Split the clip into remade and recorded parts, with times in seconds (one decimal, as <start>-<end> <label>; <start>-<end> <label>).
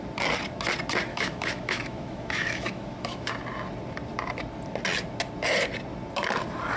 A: 0.0-1.1 recorded; 1.1-3.3 remade; 3.3-6.8 recorded